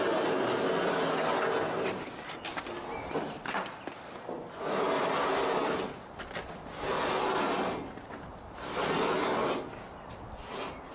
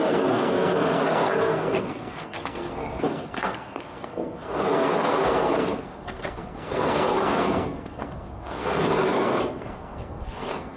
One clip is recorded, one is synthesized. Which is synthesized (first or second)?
second